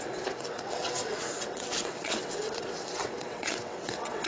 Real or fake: fake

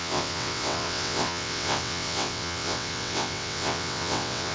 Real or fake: fake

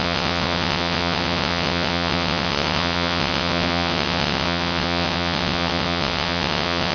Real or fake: fake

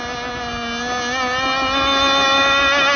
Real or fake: real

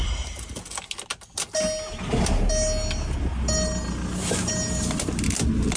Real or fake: real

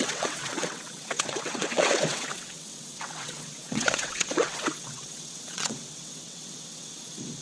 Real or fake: fake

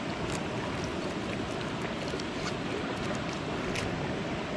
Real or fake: real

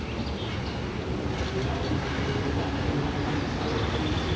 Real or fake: real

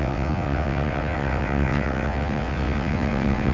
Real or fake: fake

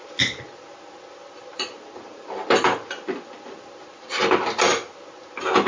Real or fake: real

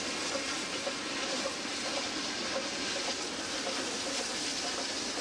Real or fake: real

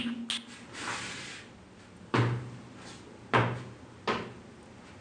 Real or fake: real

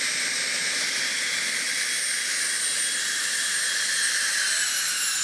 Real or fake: real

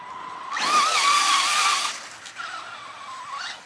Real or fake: real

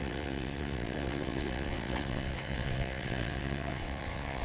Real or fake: fake